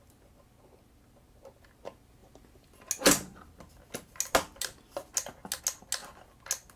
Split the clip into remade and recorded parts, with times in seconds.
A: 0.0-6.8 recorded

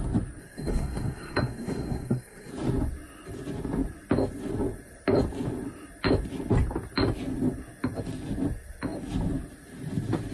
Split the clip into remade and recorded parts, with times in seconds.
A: 0.0-0.4 recorded; 0.4-2.5 remade; 2.5-10.3 recorded

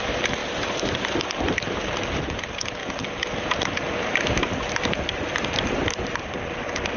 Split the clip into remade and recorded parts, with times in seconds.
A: 0.0-2.8 remade; 2.8-3.9 recorded; 3.9-7.0 remade

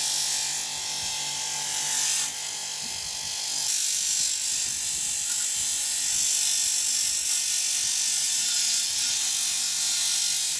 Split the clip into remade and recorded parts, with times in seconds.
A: 0.0-8.2 recorded; 8.2-9.3 remade; 9.3-10.6 recorded

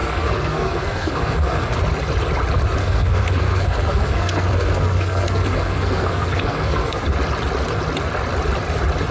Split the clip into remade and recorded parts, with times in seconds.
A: 0.0-1.8 remade; 1.8-2.8 recorded; 2.8-7.0 remade; 7.0-9.1 recorded

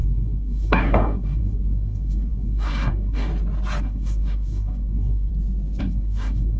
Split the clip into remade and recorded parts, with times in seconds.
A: 0.0-3.3 remade; 3.3-3.8 recorded; 3.8-5.3 remade; 5.3-5.8 recorded; 5.8-6.6 remade

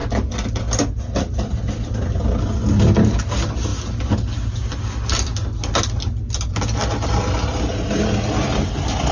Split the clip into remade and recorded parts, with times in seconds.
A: 0.0-9.1 recorded